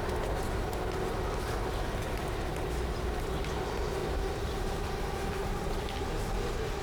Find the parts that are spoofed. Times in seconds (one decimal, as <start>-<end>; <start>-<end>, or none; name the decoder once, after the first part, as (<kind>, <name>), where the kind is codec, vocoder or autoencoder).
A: 4.0-4.9 (vocoder, BigVGAN v2)